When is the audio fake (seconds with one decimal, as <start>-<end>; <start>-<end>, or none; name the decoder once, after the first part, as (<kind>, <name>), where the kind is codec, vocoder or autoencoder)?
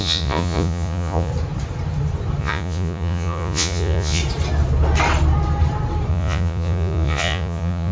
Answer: 0.0-1.3 (vocoder, Vocos); 2.4-4.2; 6.1-7.9